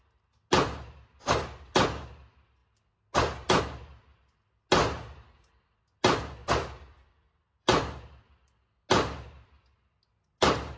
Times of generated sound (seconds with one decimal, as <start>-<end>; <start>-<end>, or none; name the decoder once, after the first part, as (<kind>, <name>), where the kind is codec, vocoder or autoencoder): none